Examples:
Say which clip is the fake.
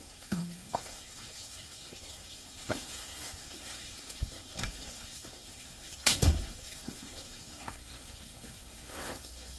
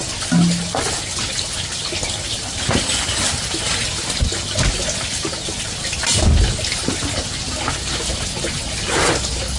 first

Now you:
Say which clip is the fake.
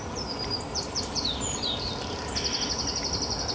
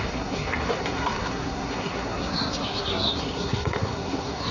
second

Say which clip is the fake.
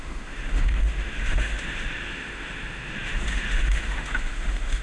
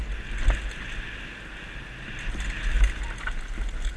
first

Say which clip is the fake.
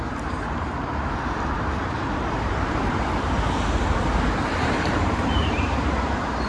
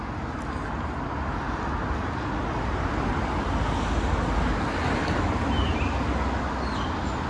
first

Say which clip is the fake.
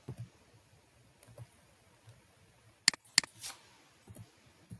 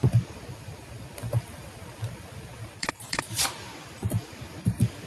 second